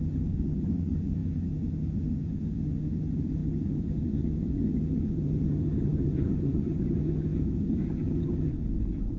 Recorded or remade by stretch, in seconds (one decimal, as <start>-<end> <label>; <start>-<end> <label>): 0.0-8.5 remade; 8.5-9.2 recorded